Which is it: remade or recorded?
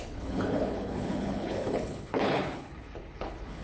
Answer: remade